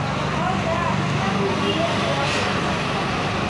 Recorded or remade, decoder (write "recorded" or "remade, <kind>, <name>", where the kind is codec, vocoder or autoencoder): recorded